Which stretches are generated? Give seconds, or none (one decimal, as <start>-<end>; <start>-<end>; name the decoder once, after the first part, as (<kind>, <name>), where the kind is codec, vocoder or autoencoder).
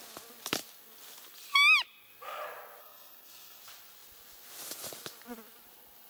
2.8-3.6 (codec, SNAC)